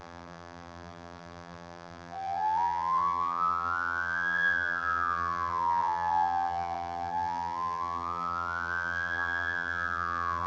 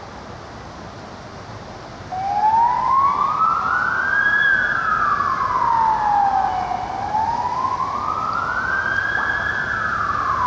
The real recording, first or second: second